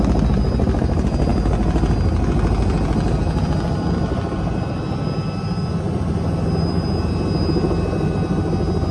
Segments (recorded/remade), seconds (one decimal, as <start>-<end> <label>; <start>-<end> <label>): 0.0-8.9 recorded